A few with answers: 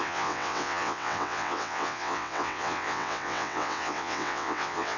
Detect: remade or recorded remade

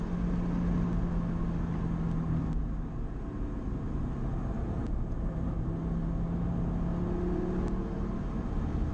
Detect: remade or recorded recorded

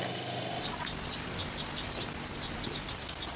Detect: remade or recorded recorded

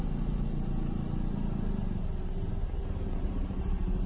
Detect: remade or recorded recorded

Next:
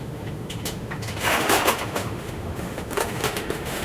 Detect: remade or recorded remade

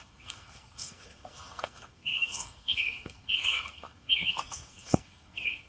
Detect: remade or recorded remade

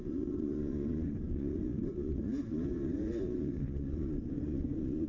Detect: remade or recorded remade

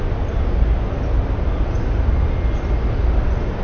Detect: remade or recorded recorded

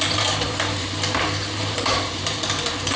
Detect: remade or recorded remade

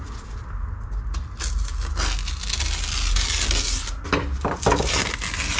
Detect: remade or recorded recorded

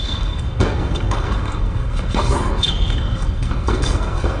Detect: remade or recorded remade